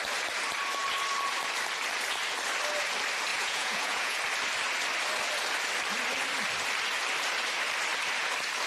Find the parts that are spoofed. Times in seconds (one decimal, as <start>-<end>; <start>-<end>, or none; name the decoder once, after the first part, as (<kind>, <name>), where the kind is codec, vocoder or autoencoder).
3.3-4.2 (vocoder, Vocos)